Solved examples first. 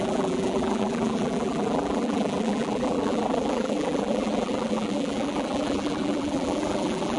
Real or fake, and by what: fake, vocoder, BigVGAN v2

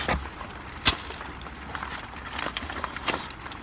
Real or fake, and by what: real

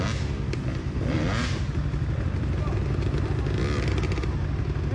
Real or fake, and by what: real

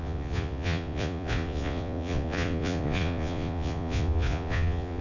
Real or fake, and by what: fake, vocoder, Vocos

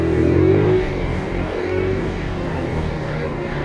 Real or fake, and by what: fake, codec, DAC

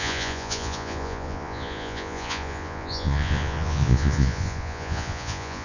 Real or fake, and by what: fake, vocoder, Vocos